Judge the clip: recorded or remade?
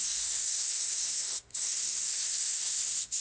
remade